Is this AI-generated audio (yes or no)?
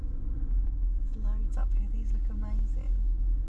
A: no